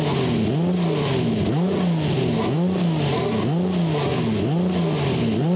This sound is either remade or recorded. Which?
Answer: recorded